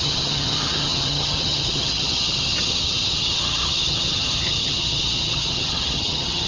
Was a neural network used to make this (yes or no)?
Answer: yes